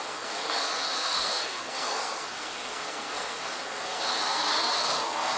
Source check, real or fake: fake